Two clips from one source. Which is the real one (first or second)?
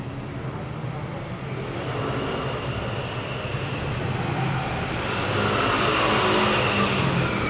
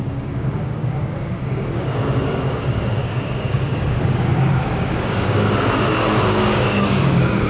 first